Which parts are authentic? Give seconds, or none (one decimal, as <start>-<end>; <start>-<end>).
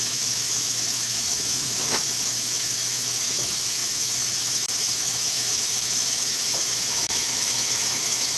none